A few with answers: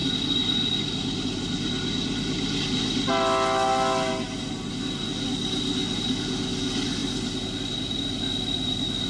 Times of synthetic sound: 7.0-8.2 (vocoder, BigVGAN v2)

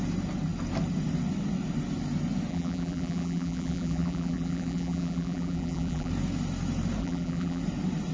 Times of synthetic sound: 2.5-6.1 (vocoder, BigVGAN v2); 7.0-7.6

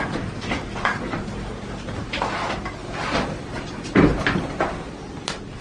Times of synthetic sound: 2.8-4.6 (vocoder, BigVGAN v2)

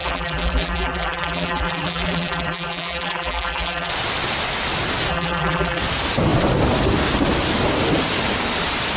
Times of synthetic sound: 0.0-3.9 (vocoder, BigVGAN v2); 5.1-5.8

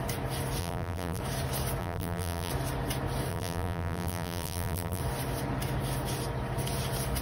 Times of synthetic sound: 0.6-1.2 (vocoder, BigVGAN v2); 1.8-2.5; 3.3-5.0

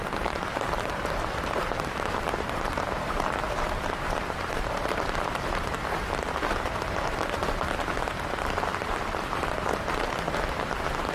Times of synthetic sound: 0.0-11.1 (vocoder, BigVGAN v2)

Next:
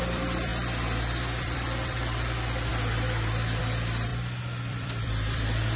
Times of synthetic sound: 0.0-0.5 (vocoder, BigVGAN v2); 1.4-2.7; 3.6-4.1; 4.7-5.8

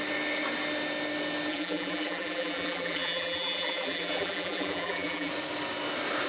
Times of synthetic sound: 1.5-5.3 (vocoder, BigVGAN v2)